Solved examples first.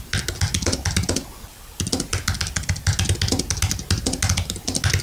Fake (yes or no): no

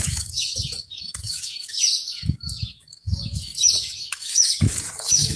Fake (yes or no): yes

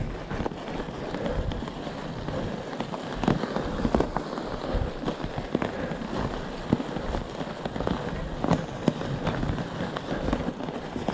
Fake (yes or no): no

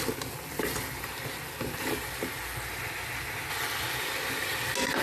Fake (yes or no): no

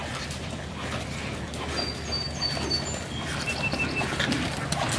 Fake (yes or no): no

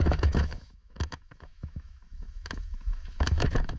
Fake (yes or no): yes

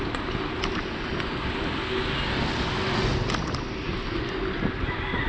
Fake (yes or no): no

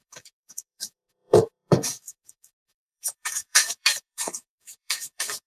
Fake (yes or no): yes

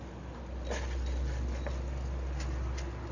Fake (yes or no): no